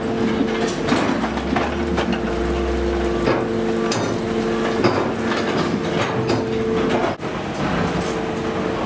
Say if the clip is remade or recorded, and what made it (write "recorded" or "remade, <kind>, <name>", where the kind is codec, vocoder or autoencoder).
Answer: recorded